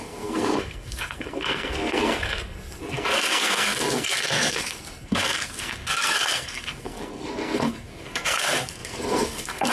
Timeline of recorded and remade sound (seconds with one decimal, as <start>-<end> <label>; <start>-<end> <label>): 0.0-9.7 remade